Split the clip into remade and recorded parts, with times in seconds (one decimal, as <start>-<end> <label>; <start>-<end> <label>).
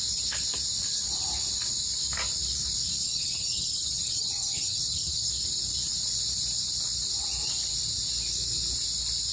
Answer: 0.0-3.0 recorded; 3.0-5.3 remade; 5.3-9.3 recorded